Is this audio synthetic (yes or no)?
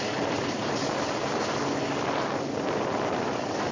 no